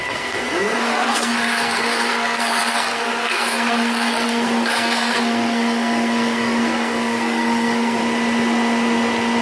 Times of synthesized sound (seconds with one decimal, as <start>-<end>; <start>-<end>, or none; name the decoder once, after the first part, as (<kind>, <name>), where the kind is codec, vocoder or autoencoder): 0.0-8.0 (codec, SNAC)